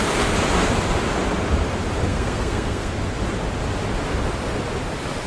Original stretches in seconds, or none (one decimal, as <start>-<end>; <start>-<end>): 0.0-2.1; 2.9-5.3

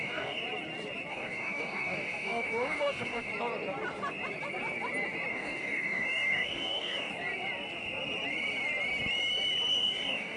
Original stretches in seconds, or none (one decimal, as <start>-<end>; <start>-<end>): 0.4-1.1; 3.3-5.3; 7.1-9.7

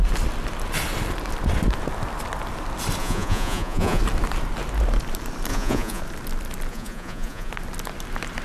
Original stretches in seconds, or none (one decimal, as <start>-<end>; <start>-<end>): 0.0-3.0; 4.0-5.5; 6.0-6.7; 7.5-8.4

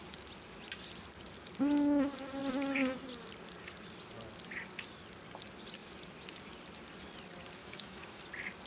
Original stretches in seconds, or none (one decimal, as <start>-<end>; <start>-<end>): 0.0-7.6; 8.2-8.7